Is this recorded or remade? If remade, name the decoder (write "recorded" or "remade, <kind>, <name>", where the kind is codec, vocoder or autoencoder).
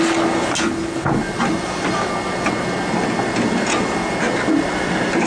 recorded